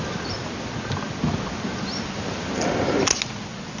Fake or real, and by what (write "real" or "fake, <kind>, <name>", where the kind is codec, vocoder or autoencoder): real